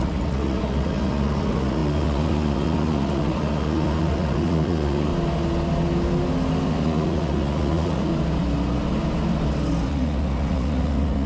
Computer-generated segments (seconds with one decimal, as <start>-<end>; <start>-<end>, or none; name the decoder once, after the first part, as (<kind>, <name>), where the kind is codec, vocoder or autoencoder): 0.0-5.1 (vocoder, Vocos); 6.7-8.1; 9.9-11.3